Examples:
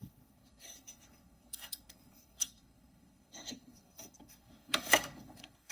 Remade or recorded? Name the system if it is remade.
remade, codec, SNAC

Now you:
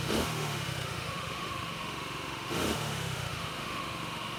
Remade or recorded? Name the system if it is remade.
remade, autoencoder, DAC-VAE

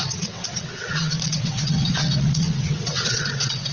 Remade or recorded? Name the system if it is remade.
remade, vocoder, WaveNeXt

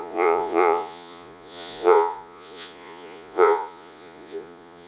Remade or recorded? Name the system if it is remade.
remade, vocoder, Vocos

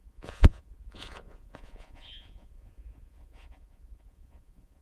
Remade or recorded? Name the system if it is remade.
remade, vocoder, Vocos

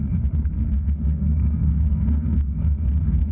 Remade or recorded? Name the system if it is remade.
remade, codec, SNAC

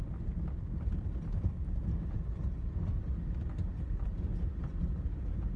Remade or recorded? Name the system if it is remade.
recorded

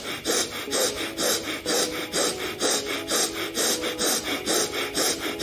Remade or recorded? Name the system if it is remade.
recorded